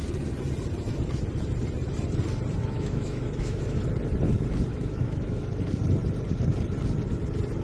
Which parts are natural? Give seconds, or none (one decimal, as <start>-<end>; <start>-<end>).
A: 0.0-2.6; 3.8-4.7; 5.4-7.6